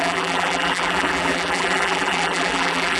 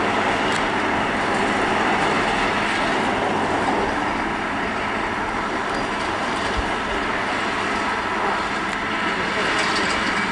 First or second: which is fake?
first